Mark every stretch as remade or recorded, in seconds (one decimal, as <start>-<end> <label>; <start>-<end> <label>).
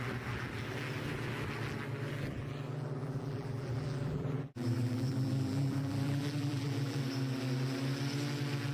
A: 0.0-3.0 recorded; 3.0-7.0 remade; 7.0-8.7 recorded